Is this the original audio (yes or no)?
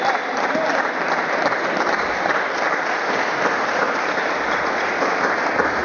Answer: no